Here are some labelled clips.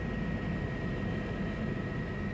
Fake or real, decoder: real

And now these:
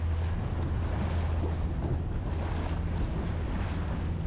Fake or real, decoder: real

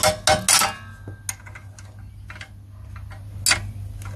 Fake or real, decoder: real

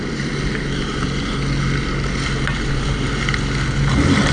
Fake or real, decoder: real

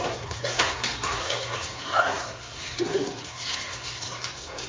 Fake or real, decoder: fake, codec, SNAC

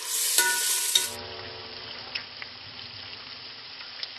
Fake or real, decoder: real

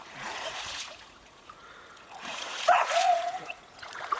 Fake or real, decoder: fake, vocoder, Vocos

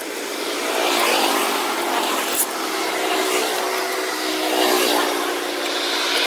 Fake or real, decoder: real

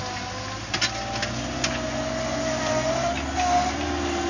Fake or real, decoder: real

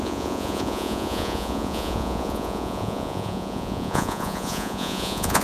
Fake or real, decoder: fake, vocoder, Vocos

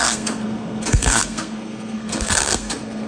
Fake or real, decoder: fake, codec, SNAC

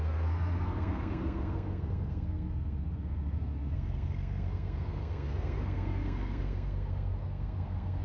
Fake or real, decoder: fake, codec, SNAC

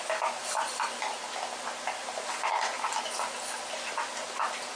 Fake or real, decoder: real